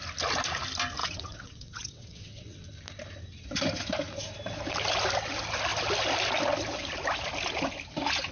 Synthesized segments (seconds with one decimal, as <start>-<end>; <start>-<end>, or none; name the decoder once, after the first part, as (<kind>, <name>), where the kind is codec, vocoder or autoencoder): 1.0-2.6 (vocoder, WaveNeXt)